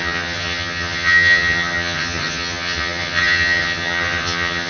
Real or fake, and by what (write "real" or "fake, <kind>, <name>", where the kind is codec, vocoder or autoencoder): fake, vocoder, HiFi-GAN